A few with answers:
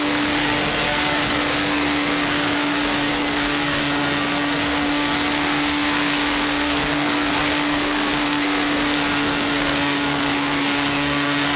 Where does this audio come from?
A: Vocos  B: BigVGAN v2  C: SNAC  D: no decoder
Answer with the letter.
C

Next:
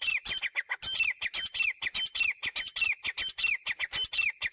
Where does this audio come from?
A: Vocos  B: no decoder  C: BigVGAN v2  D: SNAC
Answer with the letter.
B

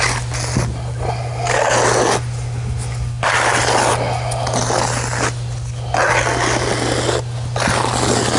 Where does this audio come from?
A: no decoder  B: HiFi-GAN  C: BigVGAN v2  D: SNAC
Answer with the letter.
A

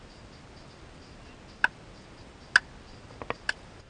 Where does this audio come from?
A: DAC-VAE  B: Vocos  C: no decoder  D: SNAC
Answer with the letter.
C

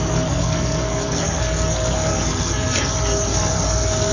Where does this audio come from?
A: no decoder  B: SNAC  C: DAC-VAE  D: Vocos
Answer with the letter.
B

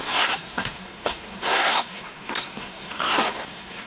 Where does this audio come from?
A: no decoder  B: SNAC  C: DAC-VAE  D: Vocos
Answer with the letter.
B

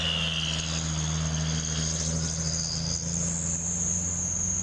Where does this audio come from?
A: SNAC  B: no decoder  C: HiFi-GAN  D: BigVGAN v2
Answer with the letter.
B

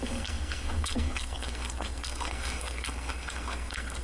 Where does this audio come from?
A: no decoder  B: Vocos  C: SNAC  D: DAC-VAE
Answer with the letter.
C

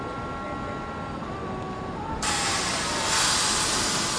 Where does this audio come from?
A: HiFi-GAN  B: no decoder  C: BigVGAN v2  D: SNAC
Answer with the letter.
B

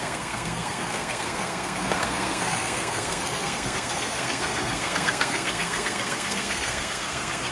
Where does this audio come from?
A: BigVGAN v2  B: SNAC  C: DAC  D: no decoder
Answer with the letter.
B